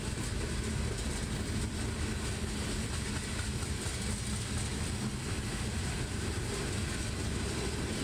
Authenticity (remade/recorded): recorded